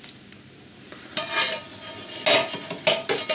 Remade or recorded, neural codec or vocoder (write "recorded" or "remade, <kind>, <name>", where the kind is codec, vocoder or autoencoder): recorded